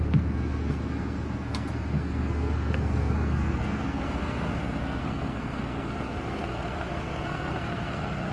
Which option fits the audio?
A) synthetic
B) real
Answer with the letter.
A